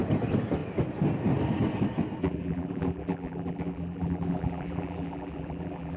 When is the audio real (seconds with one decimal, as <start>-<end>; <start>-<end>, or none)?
0.0-2.2

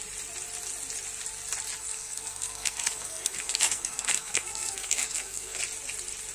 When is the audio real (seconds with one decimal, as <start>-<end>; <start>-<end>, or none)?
0.0-1.8; 5.6-6.3

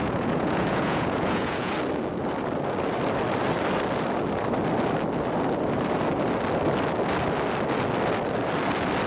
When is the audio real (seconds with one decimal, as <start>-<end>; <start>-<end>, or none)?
1.7-9.1

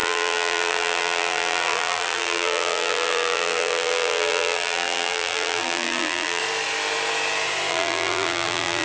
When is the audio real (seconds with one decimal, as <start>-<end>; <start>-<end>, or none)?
6.4-7.7

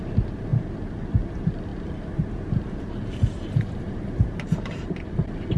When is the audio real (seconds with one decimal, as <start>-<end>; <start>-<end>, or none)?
0.0-1.7; 5.1-5.6